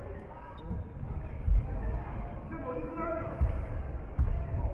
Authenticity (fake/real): fake